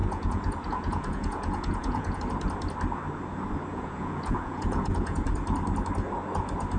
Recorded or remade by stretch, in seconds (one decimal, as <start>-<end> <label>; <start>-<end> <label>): 0.0-2.2 remade; 2.2-3.7 recorded; 3.7-5.2 remade; 5.2-6.8 recorded